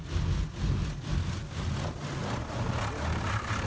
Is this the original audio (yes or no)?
yes